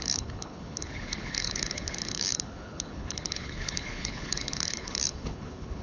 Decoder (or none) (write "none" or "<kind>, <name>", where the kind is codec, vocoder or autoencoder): codec, HILCodec